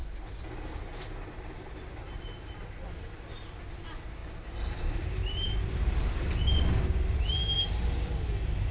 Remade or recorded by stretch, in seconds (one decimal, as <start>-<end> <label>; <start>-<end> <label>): 0.0-4.2 recorded; 4.2-5.6 remade; 5.6-7.6 recorded; 7.6-8.1 remade; 8.1-8.7 recorded